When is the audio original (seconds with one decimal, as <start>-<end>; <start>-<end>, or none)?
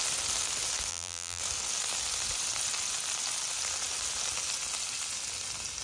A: 0.0-0.9; 1.4-5.8